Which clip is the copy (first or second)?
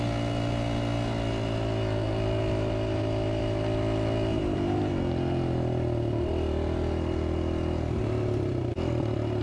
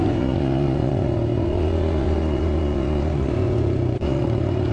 second